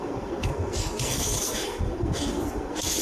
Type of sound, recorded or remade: remade